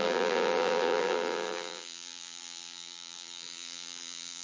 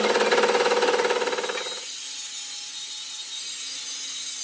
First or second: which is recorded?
second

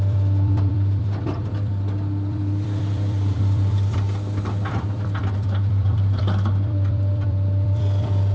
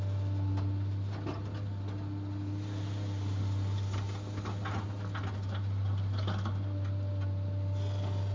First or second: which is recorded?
second